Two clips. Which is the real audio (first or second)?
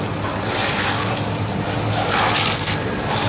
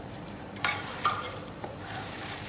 first